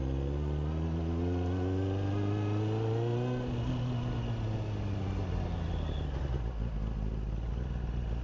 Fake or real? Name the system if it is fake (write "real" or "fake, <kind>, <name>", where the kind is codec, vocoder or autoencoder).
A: real